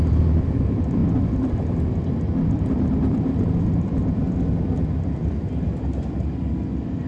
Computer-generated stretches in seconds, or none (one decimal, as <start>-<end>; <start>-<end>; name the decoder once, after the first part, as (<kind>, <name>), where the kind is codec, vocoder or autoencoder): 0.0-1.0 (vocoder, BigVGAN v2); 2.8-7.1